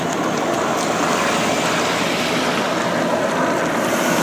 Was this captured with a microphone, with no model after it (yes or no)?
yes